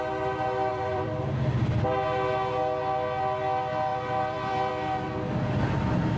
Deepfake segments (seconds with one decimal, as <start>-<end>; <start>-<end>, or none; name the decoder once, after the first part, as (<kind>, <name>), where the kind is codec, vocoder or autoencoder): 0.7-1.2 (vocoder, BigVGAN v2); 3.9-4.7